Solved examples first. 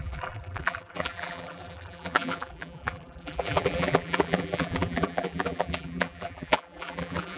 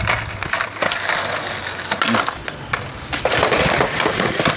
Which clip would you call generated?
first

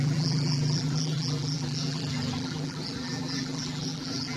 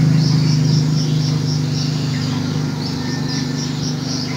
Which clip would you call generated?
first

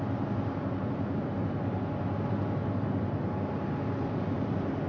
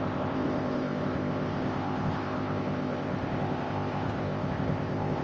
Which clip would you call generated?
second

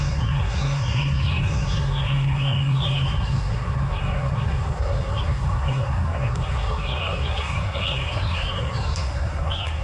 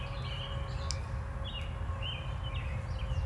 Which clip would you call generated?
first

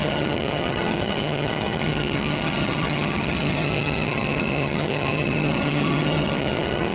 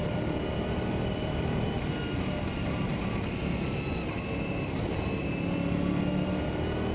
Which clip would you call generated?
first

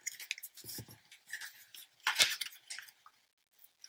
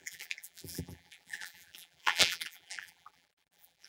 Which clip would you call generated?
second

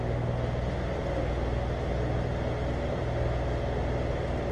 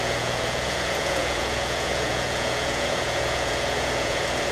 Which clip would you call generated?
second